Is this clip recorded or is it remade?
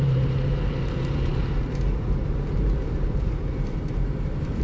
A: remade